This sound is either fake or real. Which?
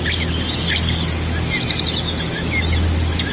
real